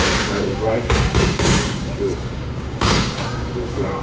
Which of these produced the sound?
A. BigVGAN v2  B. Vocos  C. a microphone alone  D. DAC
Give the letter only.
D